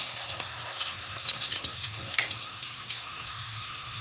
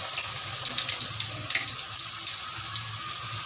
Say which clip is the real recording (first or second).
second